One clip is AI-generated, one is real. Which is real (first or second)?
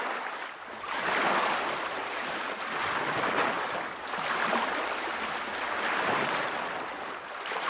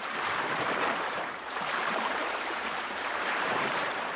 first